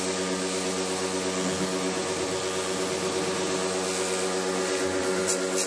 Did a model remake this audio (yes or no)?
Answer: no